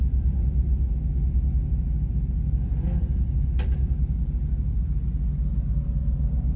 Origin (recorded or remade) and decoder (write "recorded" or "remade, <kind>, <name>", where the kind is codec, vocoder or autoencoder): recorded